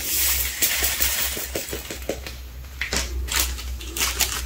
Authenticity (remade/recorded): recorded